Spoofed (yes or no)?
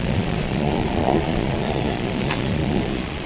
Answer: yes